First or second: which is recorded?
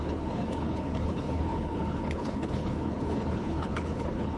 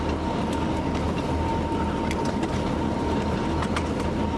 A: second